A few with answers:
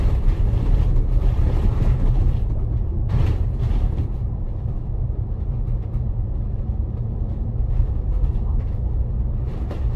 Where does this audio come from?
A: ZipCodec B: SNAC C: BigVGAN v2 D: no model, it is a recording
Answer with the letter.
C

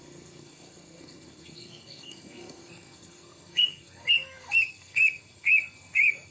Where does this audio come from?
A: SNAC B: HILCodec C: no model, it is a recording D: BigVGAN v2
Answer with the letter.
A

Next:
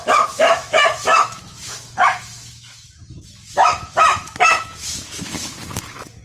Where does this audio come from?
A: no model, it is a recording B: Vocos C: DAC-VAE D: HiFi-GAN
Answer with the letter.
C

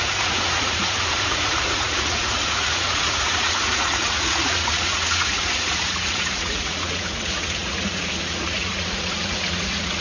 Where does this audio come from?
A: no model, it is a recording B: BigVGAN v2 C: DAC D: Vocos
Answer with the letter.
D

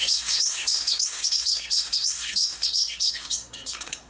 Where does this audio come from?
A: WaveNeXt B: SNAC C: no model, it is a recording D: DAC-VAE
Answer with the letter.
B